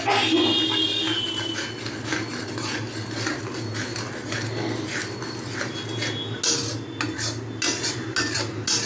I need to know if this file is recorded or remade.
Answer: recorded